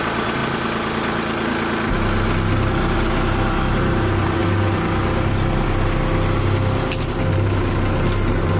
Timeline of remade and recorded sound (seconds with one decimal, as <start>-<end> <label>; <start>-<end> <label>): 0.0-0.4 remade; 0.4-3.7 recorded; 3.7-4.4 remade; 4.4-7.0 recorded; 7.0-8.6 remade